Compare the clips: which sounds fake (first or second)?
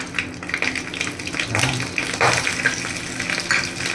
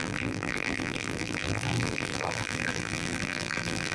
second